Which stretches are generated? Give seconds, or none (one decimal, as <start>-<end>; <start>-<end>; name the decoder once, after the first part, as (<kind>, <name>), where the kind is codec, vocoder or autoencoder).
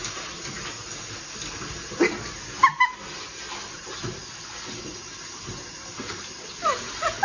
none